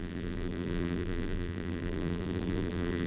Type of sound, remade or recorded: remade